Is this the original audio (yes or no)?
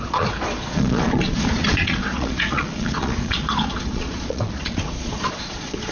no